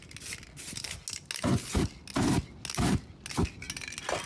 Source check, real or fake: real